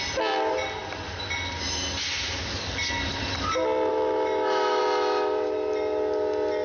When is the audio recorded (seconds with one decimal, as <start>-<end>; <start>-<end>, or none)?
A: 0.0-3.9; 4.8-6.6